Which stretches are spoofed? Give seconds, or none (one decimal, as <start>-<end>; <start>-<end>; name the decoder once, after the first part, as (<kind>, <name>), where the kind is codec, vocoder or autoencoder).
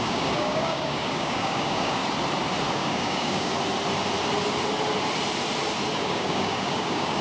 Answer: 0.0-2.0 (codec, DAC); 2.7-3.5; 6.0-7.2